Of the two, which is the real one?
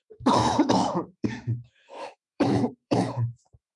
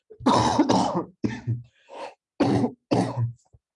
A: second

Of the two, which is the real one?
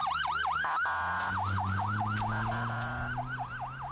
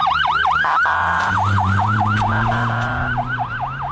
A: first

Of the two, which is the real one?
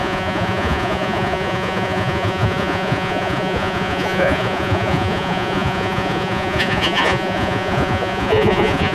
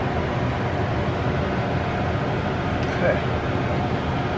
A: second